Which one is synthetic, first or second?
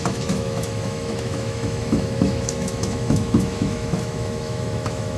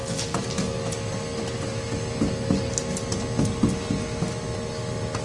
first